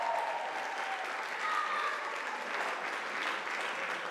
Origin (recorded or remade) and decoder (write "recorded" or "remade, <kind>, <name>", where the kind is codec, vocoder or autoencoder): recorded